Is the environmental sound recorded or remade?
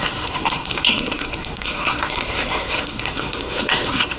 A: remade